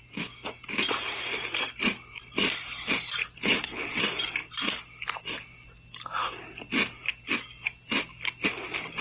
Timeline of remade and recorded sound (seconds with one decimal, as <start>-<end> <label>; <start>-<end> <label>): 0.0-3.2 recorded; 3.2-4.0 remade; 4.0-9.0 recorded